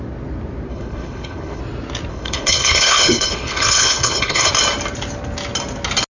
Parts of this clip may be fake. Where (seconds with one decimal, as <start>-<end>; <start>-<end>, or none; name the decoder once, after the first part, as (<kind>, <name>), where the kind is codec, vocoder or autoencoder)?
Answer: 0.7-1.6 (codec, HILCodec); 2.1-4.5